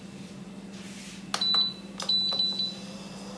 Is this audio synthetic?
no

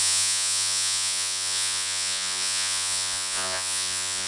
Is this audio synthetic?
yes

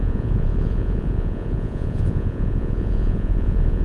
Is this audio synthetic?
yes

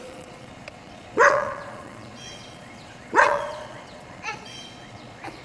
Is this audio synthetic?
yes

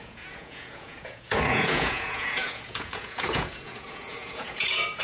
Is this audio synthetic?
yes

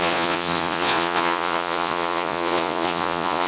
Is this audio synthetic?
yes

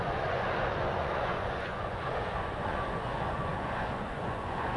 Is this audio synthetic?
yes